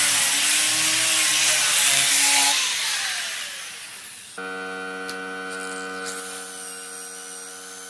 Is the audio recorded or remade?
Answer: recorded